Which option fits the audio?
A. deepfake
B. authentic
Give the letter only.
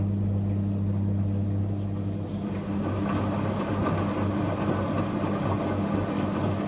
B